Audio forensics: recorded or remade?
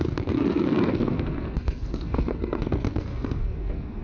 remade